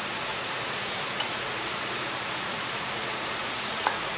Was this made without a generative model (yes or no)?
no